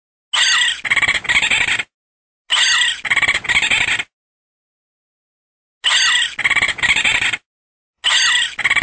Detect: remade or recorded recorded